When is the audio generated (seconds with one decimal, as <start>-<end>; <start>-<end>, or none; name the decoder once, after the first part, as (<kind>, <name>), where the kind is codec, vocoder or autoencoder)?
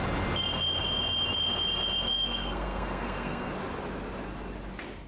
2.1-3.5 (codec, SNAC)